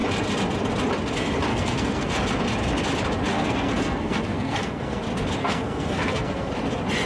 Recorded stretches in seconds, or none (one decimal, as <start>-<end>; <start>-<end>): 0.0-1.5; 2.1-3.3; 5.0-5.4; 6.5-7.1